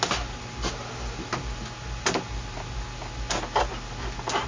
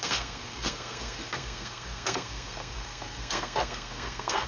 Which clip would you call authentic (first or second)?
first